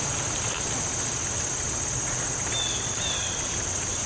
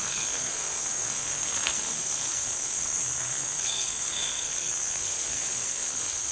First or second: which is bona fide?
first